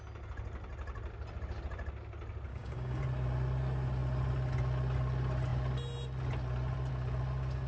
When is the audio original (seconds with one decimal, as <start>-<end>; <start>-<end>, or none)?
0.0-2.5; 3.0-7.7